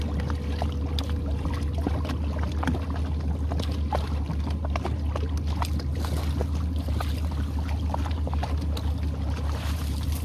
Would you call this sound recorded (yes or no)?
yes